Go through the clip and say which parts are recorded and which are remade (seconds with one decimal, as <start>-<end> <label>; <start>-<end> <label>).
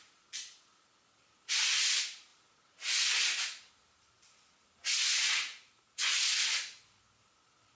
0.0-5.1 recorded; 5.1-6.3 remade; 6.3-7.7 recorded